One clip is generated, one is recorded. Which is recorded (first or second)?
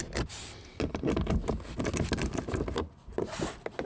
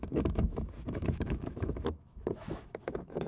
first